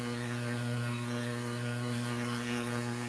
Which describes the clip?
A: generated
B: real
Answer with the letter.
A